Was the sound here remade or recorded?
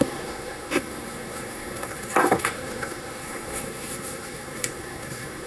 remade